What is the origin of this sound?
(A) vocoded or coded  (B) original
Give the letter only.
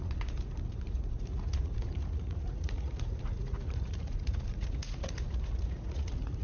A